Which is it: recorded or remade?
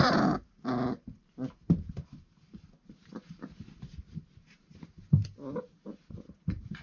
remade